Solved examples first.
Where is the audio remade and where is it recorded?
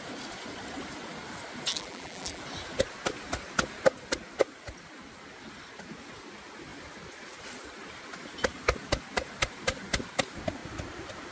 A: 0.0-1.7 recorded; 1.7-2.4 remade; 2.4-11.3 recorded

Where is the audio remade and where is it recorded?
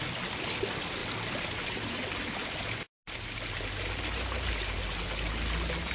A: 0.0-5.9 recorded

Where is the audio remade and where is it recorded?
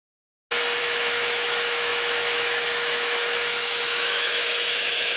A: 0.0-0.8 recorded; 0.8-5.2 remade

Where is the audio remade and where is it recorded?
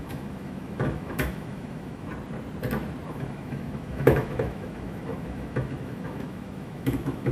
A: 0.0-2.1 remade; 2.1-3.1 recorded; 3.1-7.3 remade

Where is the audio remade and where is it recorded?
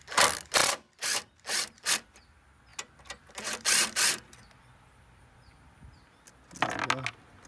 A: 0.0-7.5 recorded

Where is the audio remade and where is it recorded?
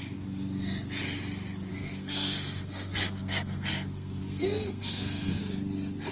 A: 0.0-1.7 recorded; 1.7-5.4 remade; 5.4-6.1 recorded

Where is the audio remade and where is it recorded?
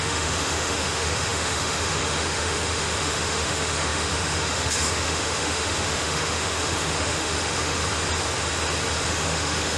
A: 0.0-7.8 remade; 7.8-9.1 recorded; 9.1-9.8 remade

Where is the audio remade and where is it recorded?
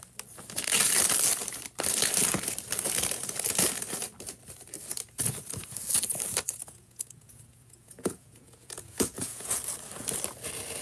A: 0.0-6.6 recorded; 6.6-9.6 remade; 9.6-10.8 recorded